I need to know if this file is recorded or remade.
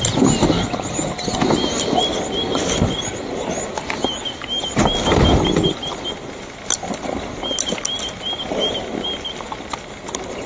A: recorded